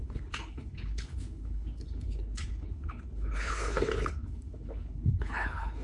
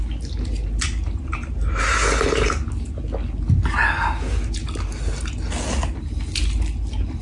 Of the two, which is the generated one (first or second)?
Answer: first